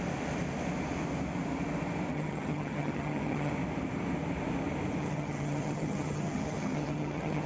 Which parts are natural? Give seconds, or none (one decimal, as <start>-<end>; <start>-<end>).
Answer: 0.0-2.1; 3.5-5.0